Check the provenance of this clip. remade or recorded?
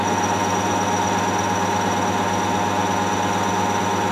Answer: recorded